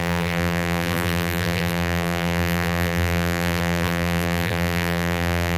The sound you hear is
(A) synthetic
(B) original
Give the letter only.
A